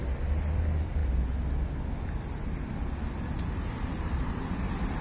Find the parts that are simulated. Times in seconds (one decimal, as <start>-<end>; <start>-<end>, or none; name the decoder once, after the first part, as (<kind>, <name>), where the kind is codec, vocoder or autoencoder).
0.0-1.0 (vocoder, BigVGAN v2); 2.8-5.0

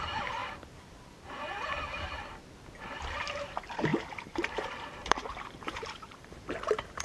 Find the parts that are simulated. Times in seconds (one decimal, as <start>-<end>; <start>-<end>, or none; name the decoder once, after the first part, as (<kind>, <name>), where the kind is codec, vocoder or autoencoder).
0.0-0.4 (vocoder, BigVGAN v2); 3.4-7.0

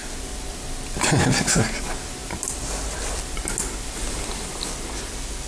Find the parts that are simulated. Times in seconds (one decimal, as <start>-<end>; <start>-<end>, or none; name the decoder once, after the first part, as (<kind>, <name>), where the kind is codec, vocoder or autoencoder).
none

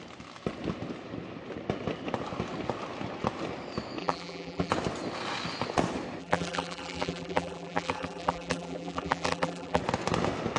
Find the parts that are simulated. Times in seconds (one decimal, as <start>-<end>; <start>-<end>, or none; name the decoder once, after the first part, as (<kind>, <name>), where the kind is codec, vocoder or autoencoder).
4.0-4.7 (vocoder, BigVGAN v2); 6.2-9.8

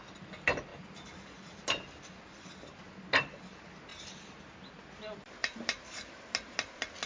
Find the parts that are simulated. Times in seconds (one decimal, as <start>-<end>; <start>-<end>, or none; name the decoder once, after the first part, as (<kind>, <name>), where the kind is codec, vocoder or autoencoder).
none

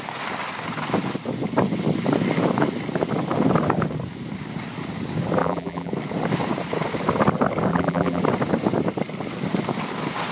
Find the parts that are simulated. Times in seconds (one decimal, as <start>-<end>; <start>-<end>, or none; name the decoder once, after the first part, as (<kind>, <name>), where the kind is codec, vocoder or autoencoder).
5.4-5.9 (vocoder, BigVGAN v2); 7.7-8.2

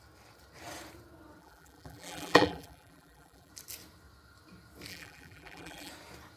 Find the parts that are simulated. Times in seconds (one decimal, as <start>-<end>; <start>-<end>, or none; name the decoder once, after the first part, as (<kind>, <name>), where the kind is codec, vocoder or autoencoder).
1.4-3.5 (vocoder, BigVGAN v2); 4.9-5.9